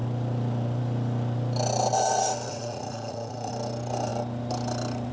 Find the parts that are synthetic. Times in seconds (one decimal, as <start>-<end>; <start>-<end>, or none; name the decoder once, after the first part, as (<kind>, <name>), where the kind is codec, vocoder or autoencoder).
2.5-3.5 (vocoder, Vocos)